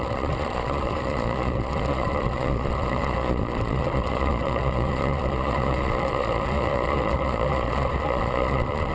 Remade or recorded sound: remade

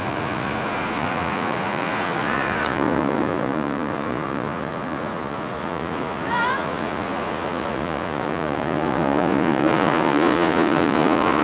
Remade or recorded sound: remade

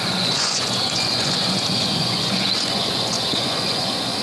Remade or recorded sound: remade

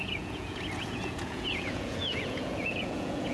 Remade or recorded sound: remade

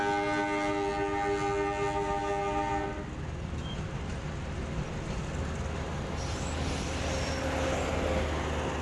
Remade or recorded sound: recorded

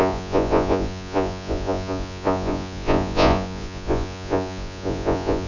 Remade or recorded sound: remade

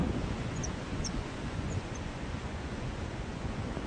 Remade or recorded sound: remade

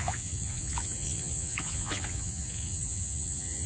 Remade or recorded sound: remade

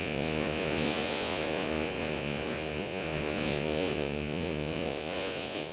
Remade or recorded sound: remade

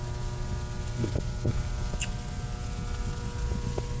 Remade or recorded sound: recorded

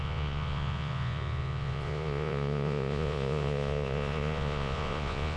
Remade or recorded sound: remade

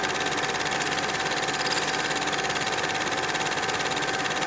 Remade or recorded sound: recorded